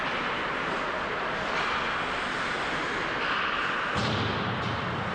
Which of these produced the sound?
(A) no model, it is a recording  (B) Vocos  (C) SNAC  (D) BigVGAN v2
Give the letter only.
A